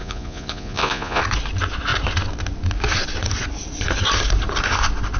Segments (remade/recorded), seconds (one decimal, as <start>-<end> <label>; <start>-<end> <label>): 0.0-1.2 remade; 1.2-5.2 recorded